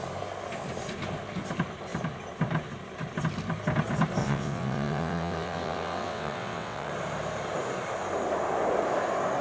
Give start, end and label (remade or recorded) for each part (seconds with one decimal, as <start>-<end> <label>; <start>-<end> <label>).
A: 0.0-4.2 recorded; 4.2-6.9 remade; 6.9-9.4 recorded